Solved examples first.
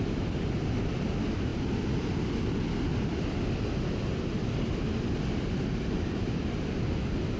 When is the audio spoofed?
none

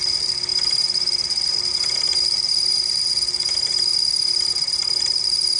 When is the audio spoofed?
none

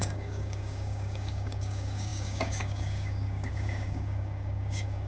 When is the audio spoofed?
0.0-5.1

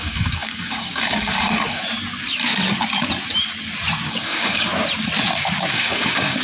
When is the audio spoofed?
0.0-1.8; 4.1-4.7; 5.7-6.4

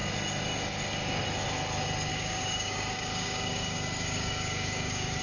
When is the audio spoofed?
2.1-5.2

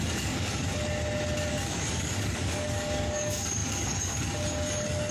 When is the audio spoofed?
0.0-0.7; 1.5-5.1